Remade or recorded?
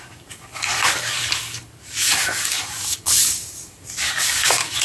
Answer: remade